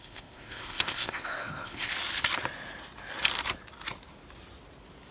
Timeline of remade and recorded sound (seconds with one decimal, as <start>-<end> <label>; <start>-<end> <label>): 0.0-1.9 remade; 1.9-5.1 recorded

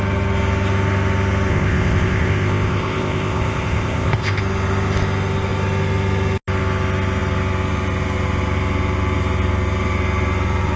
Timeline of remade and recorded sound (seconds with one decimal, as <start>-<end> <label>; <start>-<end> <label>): 0.0-1.5 recorded; 1.5-4.4 remade; 4.4-10.8 recorded